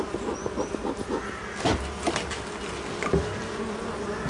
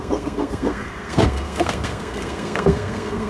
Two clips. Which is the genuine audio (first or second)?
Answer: first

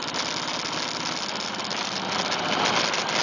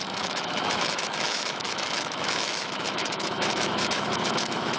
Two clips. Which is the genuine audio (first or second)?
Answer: first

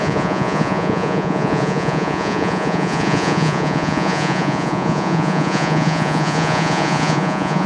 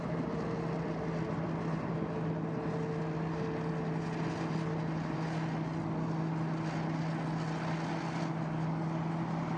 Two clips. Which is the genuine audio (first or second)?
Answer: second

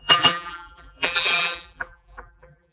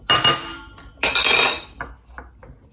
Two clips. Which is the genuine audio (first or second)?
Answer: second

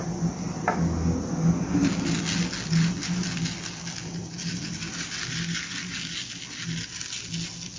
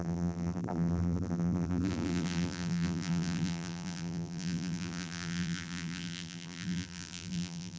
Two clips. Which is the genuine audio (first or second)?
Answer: first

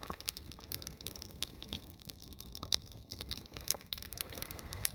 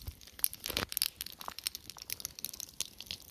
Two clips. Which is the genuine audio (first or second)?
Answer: second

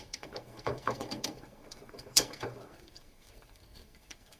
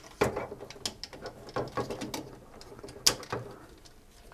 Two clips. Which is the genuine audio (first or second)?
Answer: second